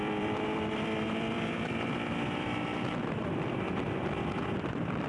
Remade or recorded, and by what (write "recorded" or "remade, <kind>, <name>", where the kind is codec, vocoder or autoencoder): remade, vocoder, BigVGAN v2